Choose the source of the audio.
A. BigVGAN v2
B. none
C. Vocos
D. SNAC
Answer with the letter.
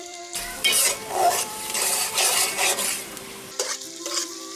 A